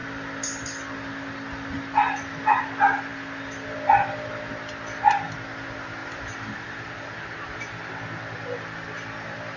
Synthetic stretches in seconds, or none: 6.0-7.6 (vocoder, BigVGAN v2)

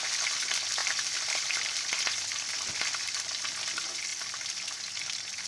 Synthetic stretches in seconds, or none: none

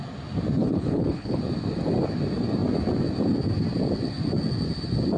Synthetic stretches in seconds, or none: 0.6-1.4 (codec, HILCodec)

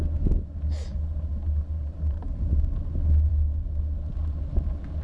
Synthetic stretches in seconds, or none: 1.8-2.7 (vocoder, BigVGAN v2)

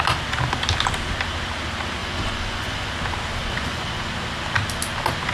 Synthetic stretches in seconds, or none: 2.0-2.9 (vocoder, Vocos); 3.4-4.1

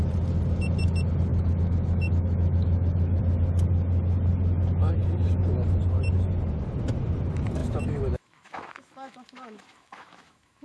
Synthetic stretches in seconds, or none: 1.3-3.2 (autoencoder, DAC-VAE); 7.6-10.6

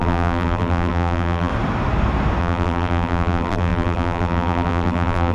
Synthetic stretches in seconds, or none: 0.0-1.5 (vocoder, BigVGAN v2); 2.4-5.3